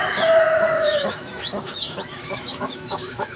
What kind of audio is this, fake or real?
fake